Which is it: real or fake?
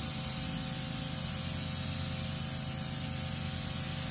real